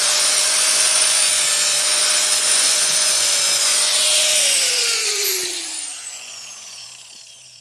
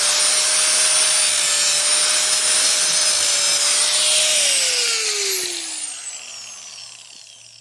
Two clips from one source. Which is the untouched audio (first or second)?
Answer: second